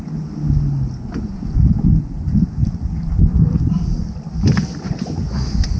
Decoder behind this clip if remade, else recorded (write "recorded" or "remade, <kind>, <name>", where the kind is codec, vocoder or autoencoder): recorded